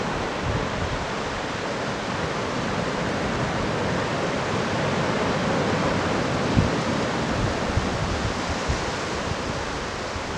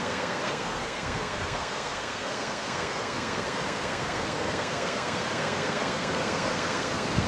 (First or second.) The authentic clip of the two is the first